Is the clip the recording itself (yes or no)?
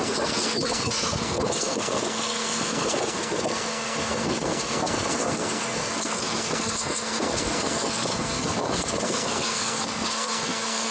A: no